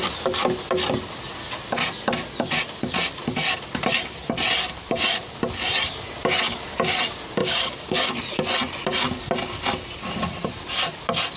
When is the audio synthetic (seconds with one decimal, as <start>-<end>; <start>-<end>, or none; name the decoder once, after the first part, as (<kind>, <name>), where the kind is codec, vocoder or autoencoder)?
7.4-8.2 (codec, DAC)